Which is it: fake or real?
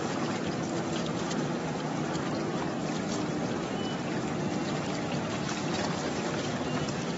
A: real